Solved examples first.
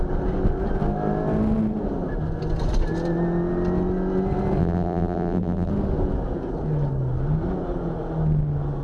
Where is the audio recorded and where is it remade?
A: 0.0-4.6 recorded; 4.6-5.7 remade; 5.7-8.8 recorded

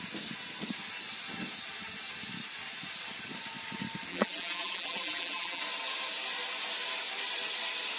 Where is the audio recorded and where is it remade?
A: 0.0-4.1 recorded; 4.1-5.6 remade; 5.6-8.0 recorded

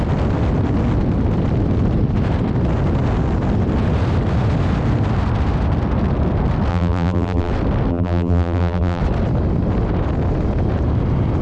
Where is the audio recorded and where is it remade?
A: 0.0-6.7 recorded; 6.7-7.5 remade; 7.5-7.9 recorded; 7.9-9.0 remade; 9.0-11.4 recorded

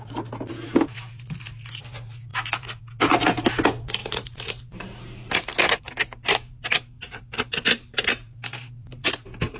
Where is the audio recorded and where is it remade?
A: 0.0-4.0 recorded; 4.0-9.1 remade; 9.1-9.6 recorded

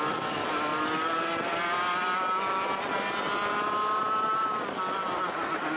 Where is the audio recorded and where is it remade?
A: 0.0-5.8 recorded